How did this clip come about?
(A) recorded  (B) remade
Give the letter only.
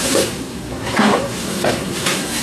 B